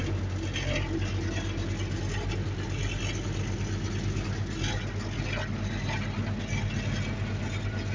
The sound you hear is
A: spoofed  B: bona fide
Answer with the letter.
B